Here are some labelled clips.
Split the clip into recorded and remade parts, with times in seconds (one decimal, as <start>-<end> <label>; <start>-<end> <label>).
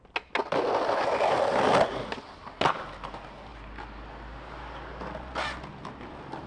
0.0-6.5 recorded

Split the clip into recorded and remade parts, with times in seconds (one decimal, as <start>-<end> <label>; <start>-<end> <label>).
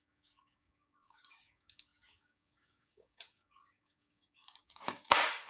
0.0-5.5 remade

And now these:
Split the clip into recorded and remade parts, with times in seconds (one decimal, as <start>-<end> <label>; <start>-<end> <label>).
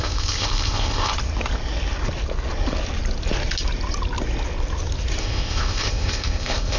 0.0-1.1 remade; 1.1-5.2 recorded; 5.2-6.8 remade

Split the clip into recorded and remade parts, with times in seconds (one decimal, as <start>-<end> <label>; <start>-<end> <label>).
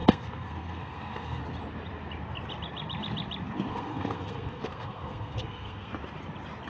0.0-1.4 remade; 1.4-3.7 recorded; 3.7-5.9 remade; 5.9-6.7 recorded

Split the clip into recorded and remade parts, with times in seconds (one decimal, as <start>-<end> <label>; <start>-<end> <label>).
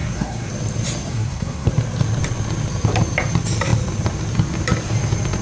0.0-0.5 remade; 0.5-1.1 recorded; 1.1-1.7 remade; 1.7-5.4 recorded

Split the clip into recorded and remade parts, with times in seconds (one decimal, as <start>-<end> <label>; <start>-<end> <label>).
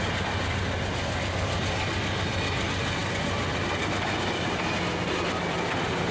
0.0-6.1 recorded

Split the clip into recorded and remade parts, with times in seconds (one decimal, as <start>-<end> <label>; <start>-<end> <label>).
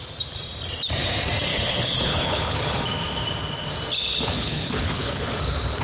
0.0-1.5 recorded; 1.5-2.8 remade; 2.8-4.1 recorded; 4.1-5.2 remade; 5.2-5.8 recorded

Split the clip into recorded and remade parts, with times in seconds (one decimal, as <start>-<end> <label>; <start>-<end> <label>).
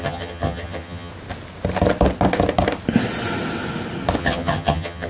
0.0-1.1 remade; 1.1-4.2 recorded; 4.2-5.1 remade